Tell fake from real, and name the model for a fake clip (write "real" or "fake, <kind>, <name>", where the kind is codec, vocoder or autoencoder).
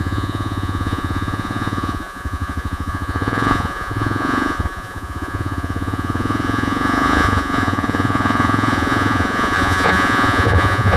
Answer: fake, vocoder, Vocos